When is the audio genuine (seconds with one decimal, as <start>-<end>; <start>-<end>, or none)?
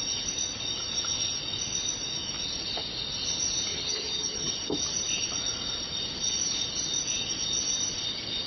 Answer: 0.0-3.7; 4.5-8.5